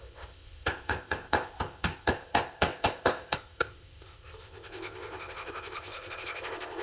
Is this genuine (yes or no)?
no